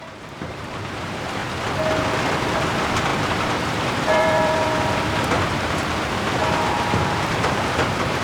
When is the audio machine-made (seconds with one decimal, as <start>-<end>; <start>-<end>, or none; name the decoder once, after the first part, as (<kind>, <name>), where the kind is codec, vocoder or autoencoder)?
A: 0.0-1.4 (vocoder, BigVGAN v2); 2.6-8.2